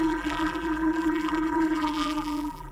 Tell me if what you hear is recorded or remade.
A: remade